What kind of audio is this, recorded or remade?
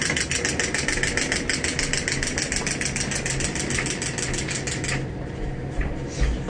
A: recorded